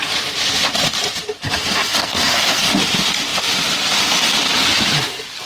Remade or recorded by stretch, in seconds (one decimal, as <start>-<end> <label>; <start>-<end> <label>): 0.0-2.0 recorded; 2.0-2.7 remade; 2.7-5.5 recorded